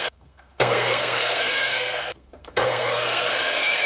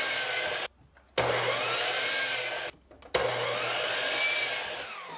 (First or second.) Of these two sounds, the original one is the second